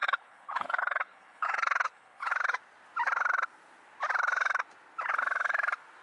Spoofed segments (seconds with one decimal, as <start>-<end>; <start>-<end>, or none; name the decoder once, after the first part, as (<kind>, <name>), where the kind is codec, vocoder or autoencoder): 0.0-2.3 (codec, HILCodec)

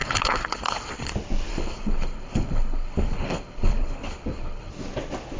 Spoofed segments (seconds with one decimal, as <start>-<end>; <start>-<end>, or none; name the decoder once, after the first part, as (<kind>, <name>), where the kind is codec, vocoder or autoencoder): 0.0-1.1 (codec, HILCodec); 1.5-4.7

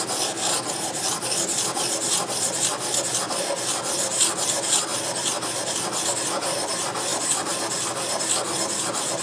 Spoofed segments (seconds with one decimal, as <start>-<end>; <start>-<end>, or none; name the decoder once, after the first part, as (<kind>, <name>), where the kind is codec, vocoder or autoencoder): none

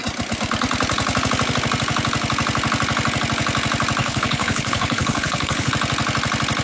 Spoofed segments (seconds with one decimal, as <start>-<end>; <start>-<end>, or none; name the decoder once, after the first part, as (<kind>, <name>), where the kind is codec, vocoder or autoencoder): 4.0-5.7 (codec, HILCodec)

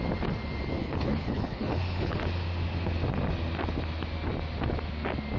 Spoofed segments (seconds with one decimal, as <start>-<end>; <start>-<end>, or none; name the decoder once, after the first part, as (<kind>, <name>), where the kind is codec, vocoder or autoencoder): 0.8-2.2 (codec, HILCodec)

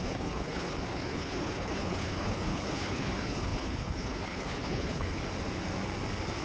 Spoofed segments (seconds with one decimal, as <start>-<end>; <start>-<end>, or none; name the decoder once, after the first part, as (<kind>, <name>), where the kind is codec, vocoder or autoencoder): 0.0-5.2 (codec, HILCodec)